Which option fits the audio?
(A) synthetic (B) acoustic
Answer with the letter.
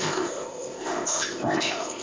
A